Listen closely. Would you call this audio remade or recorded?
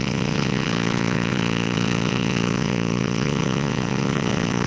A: remade